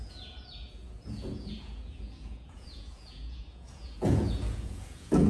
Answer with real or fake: fake